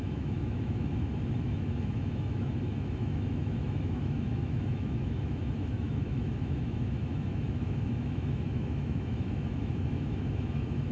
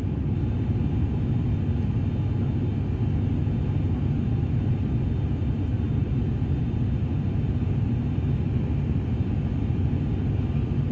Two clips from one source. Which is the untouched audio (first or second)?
second